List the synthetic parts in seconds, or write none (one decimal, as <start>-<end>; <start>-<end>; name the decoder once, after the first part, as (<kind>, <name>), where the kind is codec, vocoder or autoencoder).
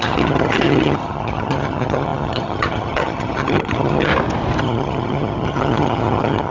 0.0-4.1 (vocoder, HiFi-GAN); 4.6-6.5